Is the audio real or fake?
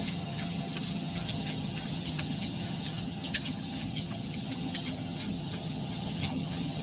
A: fake